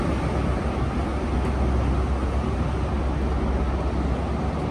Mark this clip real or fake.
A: real